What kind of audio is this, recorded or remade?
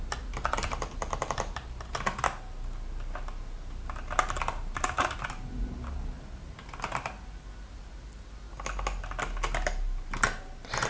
recorded